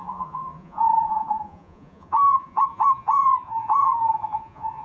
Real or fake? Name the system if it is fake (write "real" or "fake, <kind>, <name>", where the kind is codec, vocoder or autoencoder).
fake, vocoder, Vocos